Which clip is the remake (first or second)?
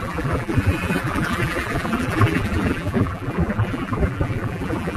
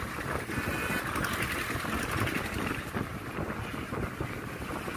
first